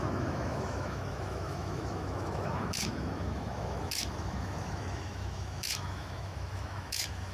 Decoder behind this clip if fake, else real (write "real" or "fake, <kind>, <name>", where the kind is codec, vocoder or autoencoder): fake, autoencoder, DAC-VAE